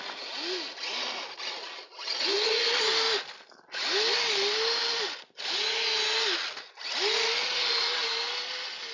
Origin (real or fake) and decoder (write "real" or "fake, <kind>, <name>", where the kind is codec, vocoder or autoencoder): real